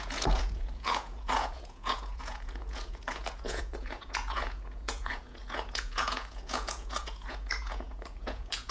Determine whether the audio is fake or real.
fake